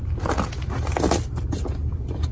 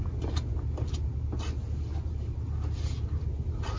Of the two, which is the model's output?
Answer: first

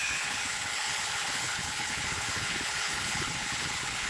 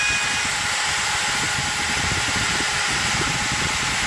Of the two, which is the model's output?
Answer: first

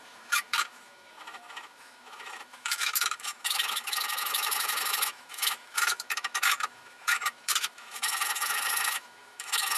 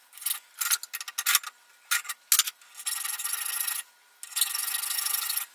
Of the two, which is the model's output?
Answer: first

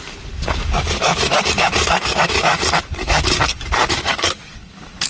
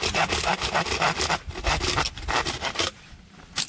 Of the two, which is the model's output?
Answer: first